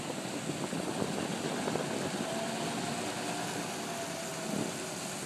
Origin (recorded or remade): recorded